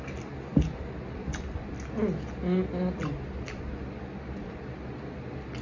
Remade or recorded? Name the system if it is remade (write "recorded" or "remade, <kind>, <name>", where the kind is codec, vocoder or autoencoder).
recorded